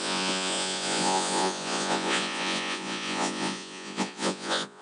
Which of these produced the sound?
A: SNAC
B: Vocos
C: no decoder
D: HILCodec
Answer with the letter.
B